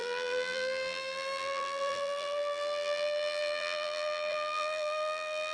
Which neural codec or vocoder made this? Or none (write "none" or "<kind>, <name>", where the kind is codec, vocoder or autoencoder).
vocoder, BigVGAN v2